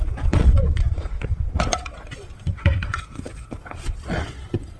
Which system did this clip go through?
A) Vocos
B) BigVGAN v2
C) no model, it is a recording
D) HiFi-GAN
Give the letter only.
A